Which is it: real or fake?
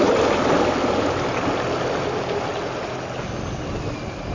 real